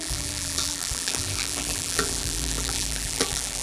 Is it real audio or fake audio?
fake